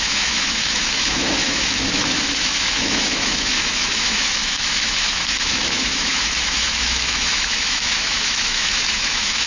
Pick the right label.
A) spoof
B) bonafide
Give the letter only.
A